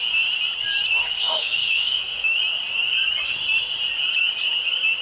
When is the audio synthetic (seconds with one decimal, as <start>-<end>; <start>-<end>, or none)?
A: 1.0-2.4

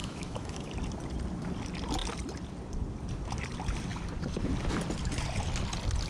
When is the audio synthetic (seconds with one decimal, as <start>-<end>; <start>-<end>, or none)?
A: 0.0-0.7

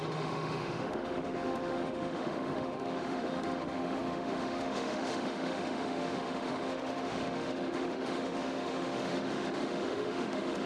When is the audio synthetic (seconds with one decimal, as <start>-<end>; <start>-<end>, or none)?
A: 0.0-10.7

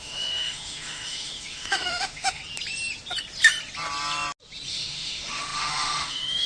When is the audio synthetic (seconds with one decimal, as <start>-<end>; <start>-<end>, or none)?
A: 0.0-2.4; 4.7-6.5

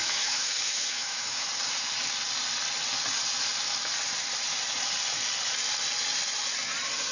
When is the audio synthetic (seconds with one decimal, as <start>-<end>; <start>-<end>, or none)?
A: 0.0-1.5

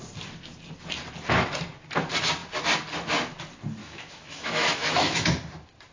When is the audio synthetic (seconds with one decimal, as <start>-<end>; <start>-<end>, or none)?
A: 3.8-5.3